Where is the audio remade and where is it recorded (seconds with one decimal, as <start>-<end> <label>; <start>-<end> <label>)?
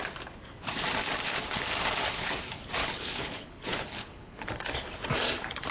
0.0-2.8 recorded; 2.8-4.5 remade; 4.5-5.7 recorded